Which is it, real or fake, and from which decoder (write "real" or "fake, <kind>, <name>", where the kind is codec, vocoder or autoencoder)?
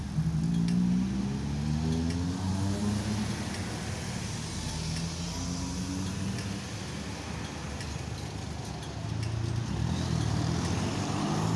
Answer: real